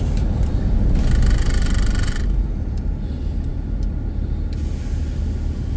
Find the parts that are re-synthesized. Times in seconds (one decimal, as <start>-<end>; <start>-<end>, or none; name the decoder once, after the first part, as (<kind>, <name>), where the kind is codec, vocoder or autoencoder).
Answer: none